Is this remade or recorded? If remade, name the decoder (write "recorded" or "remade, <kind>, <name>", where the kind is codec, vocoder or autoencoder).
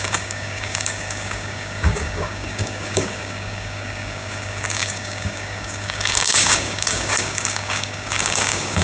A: remade, codec, DAC